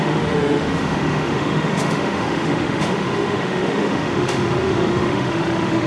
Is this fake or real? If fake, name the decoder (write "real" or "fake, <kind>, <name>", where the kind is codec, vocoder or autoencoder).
fake, autoencoder, DAC-VAE